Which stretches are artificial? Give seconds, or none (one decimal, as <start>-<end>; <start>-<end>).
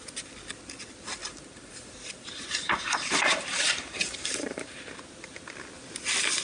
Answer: 1.2-5.0